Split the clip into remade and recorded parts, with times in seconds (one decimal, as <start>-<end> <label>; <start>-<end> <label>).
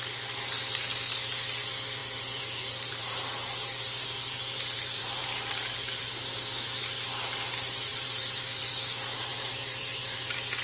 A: 0.0-2.0 recorded; 2.0-6.0 remade; 6.0-7.9 recorded; 7.9-8.6 remade; 8.6-9.3 recorded; 9.3-10.2 remade; 10.2-10.6 recorded